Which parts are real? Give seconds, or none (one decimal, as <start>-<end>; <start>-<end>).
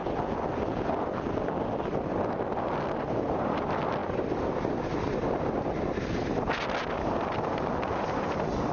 0.0-8.7